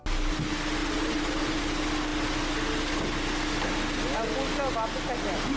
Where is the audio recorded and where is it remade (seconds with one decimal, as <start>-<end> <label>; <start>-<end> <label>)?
0.0-0.8 recorded; 0.8-1.6 remade; 1.6-5.6 recorded